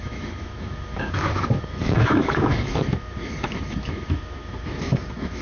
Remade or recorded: remade